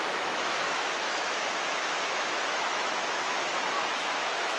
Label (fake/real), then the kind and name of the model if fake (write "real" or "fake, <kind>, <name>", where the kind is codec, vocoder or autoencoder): fake, autoencoder, DAC-VAE